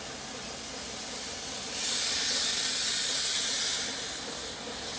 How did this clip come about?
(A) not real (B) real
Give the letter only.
B